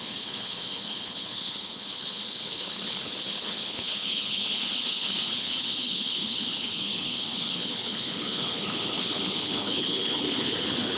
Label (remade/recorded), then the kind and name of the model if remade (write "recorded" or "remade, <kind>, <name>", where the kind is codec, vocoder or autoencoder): remade, codec, HILCodec